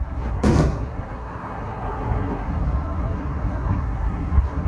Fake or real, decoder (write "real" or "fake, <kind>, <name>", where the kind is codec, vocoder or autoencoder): fake, codec, SNAC